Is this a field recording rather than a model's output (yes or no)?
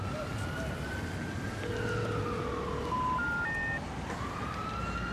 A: yes